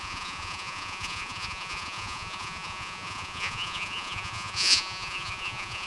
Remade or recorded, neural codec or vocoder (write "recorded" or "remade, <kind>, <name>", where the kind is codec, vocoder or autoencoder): remade, vocoder, Vocos